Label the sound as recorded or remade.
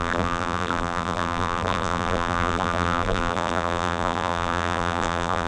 remade